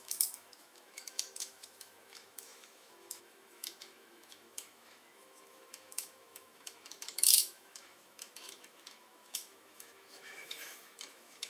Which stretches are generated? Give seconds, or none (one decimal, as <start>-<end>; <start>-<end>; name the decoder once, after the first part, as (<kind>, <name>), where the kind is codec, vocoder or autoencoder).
0.0-11.5 (autoencoder, DAC-VAE)